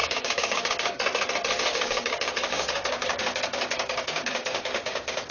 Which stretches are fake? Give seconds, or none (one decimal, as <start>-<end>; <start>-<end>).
0.0-1.0; 1.7-5.3